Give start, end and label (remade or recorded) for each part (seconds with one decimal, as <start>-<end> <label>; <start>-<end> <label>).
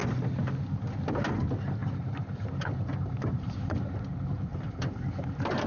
0.0-1.8 recorded; 1.8-4.0 remade; 4.0-4.5 recorded; 4.5-5.0 remade; 5.0-5.7 recorded